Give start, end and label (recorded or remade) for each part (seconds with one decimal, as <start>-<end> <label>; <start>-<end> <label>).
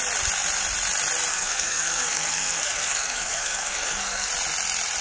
0.0-1.3 recorded; 1.3-4.3 remade; 4.3-5.0 recorded